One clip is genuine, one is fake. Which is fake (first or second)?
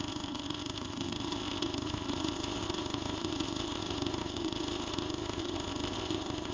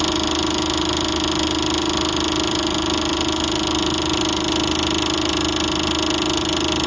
first